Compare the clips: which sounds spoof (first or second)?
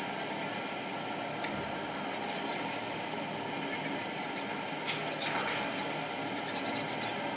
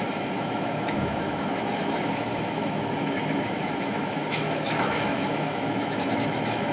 second